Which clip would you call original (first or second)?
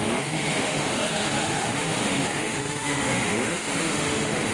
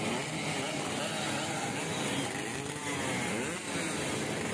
second